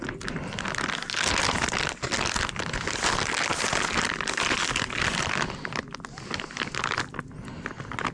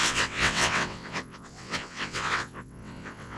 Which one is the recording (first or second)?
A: first